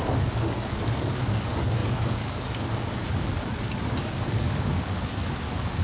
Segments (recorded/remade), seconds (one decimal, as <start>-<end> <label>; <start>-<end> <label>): 0.0-5.8 remade